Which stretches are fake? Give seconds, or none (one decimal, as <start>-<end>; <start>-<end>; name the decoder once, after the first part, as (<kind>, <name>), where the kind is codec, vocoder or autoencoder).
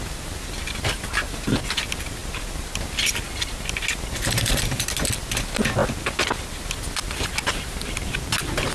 none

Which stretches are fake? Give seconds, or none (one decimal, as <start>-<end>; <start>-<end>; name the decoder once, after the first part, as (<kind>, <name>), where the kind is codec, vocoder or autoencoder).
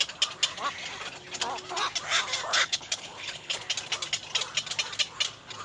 2.5-3.6 (codec, HILCodec)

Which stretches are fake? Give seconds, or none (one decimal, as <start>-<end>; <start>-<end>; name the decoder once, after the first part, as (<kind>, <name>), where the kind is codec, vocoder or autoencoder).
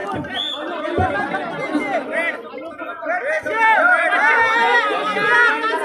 none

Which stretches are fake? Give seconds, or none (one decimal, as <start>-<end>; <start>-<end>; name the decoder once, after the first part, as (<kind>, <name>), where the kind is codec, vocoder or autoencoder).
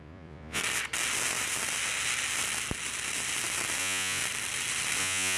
0.0-0.6 (vocoder, Vocos); 3.8-4.2; 5.0-5.4